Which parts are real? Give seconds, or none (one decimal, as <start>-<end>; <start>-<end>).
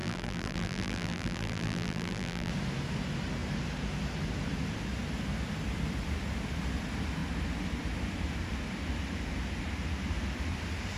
2.5-11.0